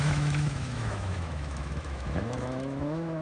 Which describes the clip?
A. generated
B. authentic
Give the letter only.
A